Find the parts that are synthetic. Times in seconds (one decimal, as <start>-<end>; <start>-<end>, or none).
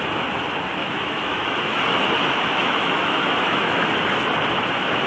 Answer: 0.8-3.9